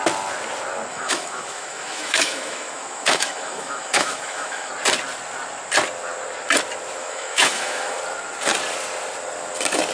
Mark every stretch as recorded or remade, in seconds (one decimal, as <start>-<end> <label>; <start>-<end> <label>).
0.0-0.9 recorded; 0.9-4.7 remade; 4.7-7.0 recorded; 7.0-8.0 remade; 8.0-9.9 recorded